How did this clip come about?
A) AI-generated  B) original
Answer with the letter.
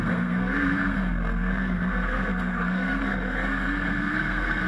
A